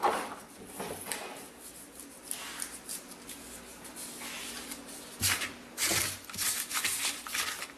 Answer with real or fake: real